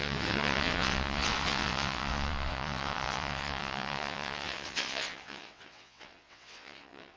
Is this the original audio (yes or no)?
no